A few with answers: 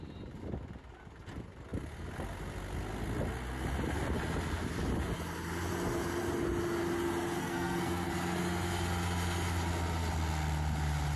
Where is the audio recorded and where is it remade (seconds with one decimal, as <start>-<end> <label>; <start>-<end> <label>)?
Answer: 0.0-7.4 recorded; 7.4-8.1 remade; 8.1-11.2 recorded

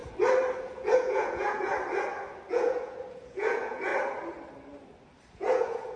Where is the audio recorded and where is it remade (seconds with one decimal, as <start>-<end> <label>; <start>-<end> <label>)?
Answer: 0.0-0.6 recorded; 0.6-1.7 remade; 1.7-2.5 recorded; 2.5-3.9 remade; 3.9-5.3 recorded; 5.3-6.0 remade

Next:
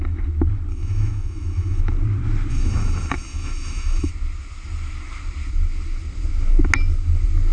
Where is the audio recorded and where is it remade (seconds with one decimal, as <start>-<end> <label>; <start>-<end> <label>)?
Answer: 0.0-0.7 recorded; 0.7-1.8 remade; 1.8-2.5 recorded; 2.5-4.1 remade; 4.1-7.5 recorded